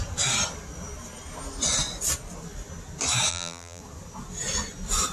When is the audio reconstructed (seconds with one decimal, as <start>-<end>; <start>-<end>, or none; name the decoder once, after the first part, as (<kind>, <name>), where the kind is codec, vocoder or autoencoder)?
3.3-3.8 (vocoder, BigVGAN v2)